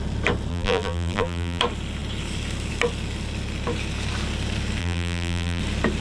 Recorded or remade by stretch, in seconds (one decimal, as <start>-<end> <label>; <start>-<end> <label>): 0.0-0.5 recorded; 0.5-1.6 remade; 1.6-4.8 recorded; 4.8-5.6 remade; 5.6-6.0 recorded